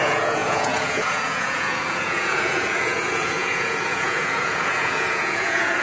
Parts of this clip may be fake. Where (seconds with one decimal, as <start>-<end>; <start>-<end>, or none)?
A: 0.0-5.8